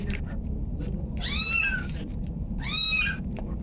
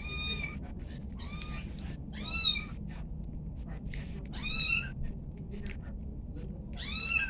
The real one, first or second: second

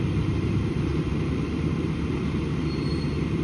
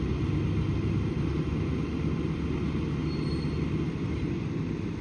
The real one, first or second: second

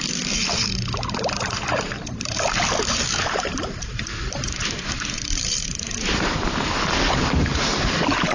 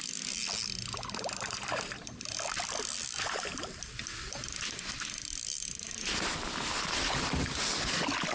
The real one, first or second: second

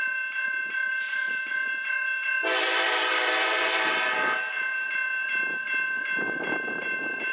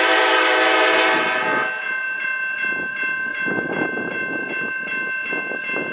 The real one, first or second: second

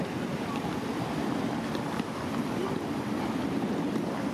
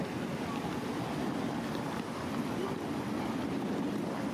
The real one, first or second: second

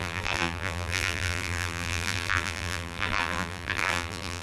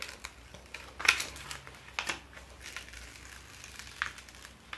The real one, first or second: second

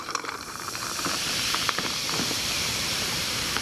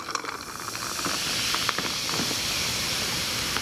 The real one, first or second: second